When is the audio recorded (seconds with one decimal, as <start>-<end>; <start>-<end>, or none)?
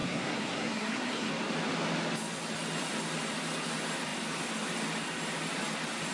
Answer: 1.3-6.1